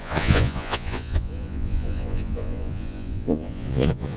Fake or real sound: fake